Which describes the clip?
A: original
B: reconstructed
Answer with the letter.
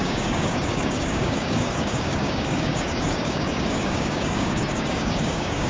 B